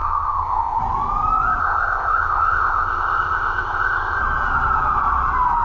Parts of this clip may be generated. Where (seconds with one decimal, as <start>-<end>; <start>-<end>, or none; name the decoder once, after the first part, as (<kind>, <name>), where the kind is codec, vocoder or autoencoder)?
0.0-0.8 (codec, ZipCodec); 1.6-4.2